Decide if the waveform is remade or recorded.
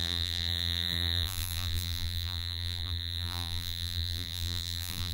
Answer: remade